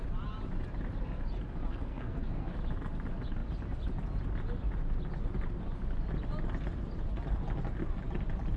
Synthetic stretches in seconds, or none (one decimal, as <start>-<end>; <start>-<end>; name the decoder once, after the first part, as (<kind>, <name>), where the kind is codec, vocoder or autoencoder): 1.7-2.5 (codec, SNAC)